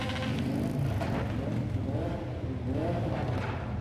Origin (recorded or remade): recorded